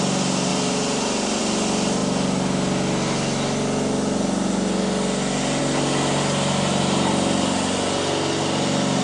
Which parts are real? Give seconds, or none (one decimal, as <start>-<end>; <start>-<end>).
0.0-0.5; 1.4-9.0